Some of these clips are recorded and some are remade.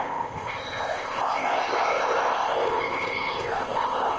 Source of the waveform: remade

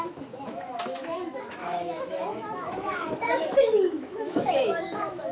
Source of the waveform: remade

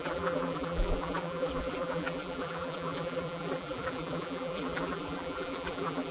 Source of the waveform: remade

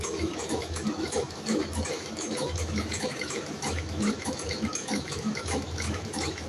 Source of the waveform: remade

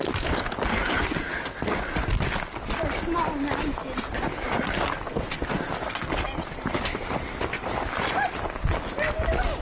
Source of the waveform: recorded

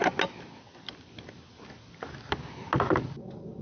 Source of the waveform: recorded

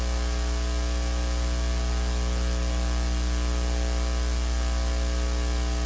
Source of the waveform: recorded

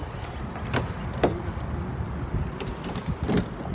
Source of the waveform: recorded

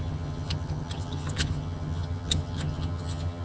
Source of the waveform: remade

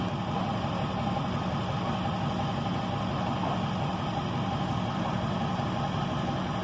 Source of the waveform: recorded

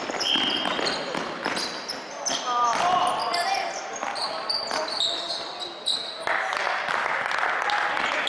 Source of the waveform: recorded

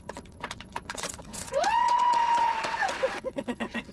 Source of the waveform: remade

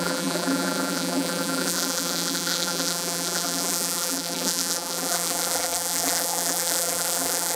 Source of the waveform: remade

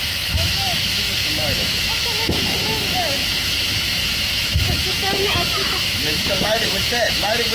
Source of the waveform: remade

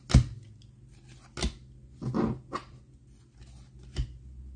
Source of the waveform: recorded